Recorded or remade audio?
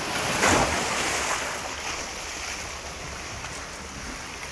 recorded